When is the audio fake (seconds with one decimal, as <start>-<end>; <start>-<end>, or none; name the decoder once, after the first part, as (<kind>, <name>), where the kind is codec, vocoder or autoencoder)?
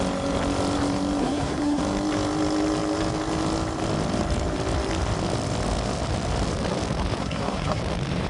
1.2-1.8 (codec, SNAC); 7.2-7.8